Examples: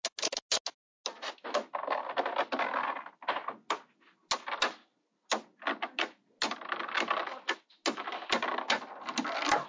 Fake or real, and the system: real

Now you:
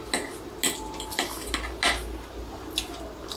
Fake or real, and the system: real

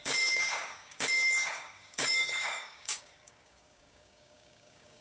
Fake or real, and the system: fake, codec, DAC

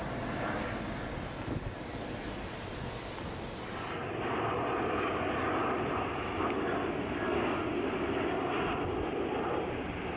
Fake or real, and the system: real